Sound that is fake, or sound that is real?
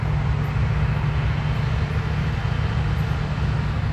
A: real